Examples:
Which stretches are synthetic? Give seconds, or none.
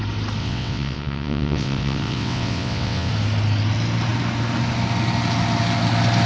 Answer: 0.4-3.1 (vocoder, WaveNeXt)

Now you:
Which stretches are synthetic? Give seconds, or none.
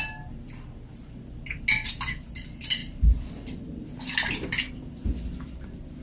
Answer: 2.8-4.7 (vocoder, BigVGAN v2)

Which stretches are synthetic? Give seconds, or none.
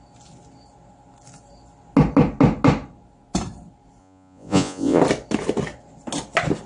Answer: 4.0-5.0 (vocoder, Vocos)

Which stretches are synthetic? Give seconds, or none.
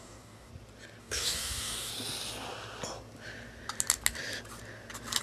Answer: 0.0-0.5 (codec, DAC); 1.0-1.9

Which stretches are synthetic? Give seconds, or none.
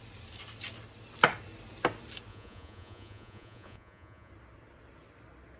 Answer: 2.3-4.3 (vocoder, Vocos)